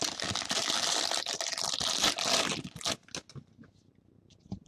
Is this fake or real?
real